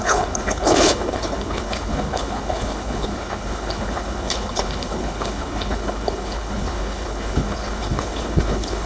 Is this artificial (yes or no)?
yes